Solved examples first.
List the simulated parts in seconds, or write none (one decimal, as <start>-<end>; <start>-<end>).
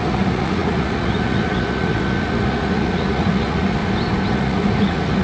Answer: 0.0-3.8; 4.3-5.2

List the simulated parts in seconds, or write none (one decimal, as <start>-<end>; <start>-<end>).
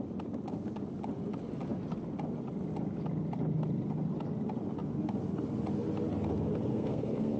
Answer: 6.7-7.4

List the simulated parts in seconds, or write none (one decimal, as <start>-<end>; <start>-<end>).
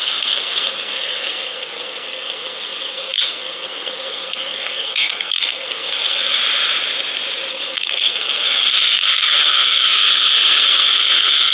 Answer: 0.0-6.4; 7.5-11.5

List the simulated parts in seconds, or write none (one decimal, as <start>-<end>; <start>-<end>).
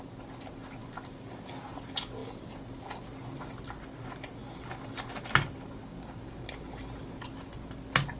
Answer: none